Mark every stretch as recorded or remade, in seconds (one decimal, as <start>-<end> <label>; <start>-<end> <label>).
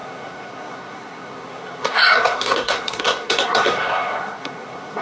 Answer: 0.0-5.0 remade